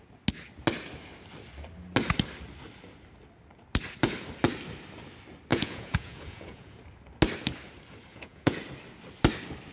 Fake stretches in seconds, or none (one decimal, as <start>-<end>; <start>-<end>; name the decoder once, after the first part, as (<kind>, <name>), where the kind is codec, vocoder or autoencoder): 5.5-6.8 (vocoder, Vocos); 8.1-8.6